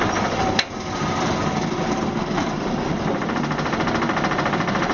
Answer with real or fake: fake